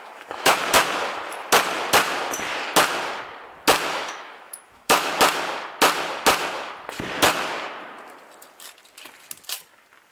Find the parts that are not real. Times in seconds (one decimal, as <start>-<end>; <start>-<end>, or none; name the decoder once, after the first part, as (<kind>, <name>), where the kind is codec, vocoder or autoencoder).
0.0-0.6 (autoencoder, DAC-VAE); 3.9-5.1